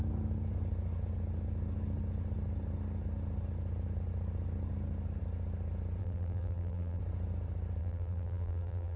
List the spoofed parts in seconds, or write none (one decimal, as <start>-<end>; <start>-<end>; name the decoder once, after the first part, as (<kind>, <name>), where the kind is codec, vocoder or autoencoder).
6.0-7.0 (vocoder, BigVGAN v2); 7.8-9.0